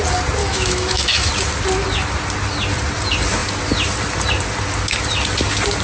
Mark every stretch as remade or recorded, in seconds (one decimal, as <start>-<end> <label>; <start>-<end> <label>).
0.0-0.4 recorded; 0.4-1.3 remade; 1.3-5.8 recorded